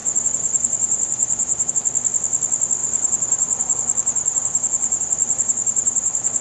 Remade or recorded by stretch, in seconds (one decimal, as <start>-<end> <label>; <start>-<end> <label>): 0.0-1.7 remade; 1.7-2.8 recorded; 2.8-6.4 remade